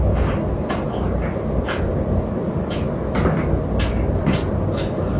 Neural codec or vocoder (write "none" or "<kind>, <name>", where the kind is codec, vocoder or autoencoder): none